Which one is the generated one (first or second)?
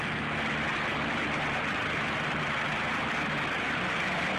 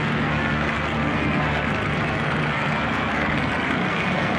second